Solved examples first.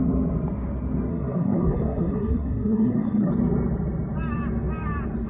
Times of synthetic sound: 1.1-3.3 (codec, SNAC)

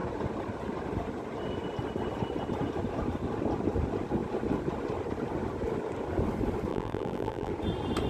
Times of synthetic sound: 6.7-7.5 (vocoder, BigVGAN v2)

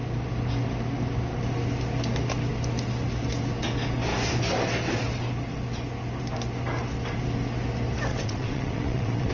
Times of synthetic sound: 8.1-9.3 (vocoder, WaveNeXt)

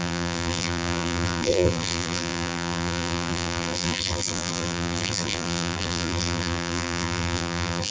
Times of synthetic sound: 0.0-7.9 (vocoder, BigVGAN v2)

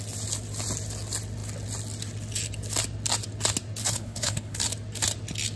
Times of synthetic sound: 3.8-4.6 (codec, HILCodec)